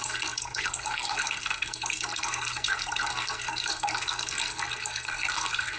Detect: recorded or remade remade